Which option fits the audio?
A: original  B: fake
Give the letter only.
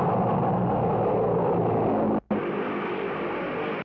A